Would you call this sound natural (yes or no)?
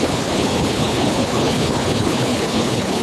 no